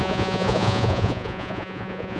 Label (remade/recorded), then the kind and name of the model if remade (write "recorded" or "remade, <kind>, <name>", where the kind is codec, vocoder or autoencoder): remade, vocoder, Vocos